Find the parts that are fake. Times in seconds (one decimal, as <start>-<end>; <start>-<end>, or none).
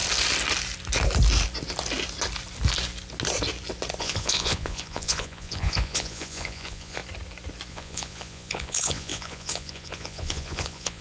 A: 4.0-7.0; 7.7-11.0